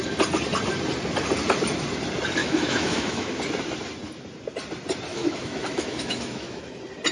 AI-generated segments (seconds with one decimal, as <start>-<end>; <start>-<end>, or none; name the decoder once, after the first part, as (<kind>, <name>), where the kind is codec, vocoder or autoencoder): 2.4-3.4 (autoencoder, DAC-VAE); 5.1-6.6